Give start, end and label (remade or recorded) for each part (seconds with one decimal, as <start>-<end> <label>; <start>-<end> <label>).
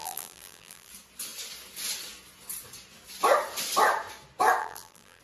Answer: 0.0-0.9 remade; 0.9-4.6 recorded; 4.6-5.2 remade